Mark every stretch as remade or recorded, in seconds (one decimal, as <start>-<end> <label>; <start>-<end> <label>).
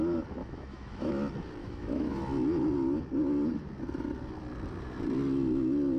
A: 0.0-0.4 recorded; 0.4-1.1 remade; 1.1-1.6 recorded; 1.6-2.2 remade; 2.2-6.0 recorded